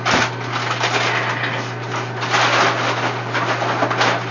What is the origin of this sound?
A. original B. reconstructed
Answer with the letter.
A